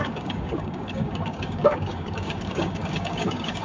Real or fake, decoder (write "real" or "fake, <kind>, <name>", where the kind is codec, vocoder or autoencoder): fake, codec, DAC